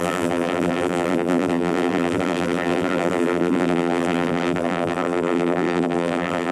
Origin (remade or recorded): remade